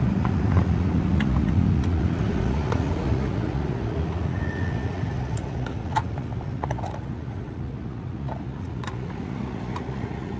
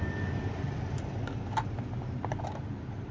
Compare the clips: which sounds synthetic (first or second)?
first